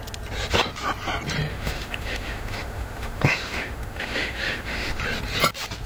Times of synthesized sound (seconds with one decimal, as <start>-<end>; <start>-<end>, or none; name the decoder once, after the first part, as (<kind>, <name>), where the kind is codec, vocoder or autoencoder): 1.5-5.0 (autoencoder, DAC-VAE)